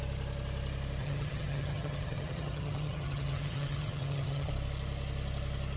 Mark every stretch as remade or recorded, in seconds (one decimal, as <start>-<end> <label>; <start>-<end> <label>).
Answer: 0.0-1.0 recorded; 1.0-4.5 remade; 4.5-5.8 recorded